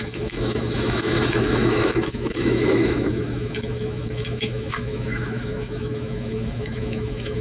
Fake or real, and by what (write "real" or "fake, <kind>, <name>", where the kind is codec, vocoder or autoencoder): fake, autoencoder, DAC-VAE